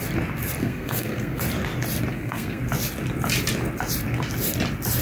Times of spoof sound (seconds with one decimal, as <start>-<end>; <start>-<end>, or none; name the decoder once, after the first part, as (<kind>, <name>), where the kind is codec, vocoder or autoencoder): 0.6-1.4 (codec, SNAC); 2.1-2.6